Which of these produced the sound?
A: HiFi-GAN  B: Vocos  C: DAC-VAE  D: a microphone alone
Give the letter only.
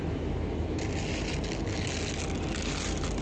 D